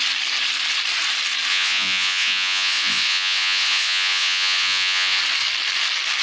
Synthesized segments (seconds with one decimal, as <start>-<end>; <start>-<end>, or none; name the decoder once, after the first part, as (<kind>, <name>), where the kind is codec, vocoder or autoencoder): 1.5-5.2 (vocoder, Vocos)